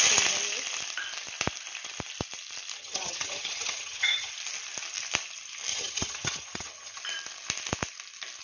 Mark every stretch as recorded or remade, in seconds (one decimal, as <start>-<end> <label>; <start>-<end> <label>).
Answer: 0.0-2.8 recorded; 2.8-4.3 remade; 4.3-5.7 recorded; 5.7-7.0 remade; 7.0-8.4 recorded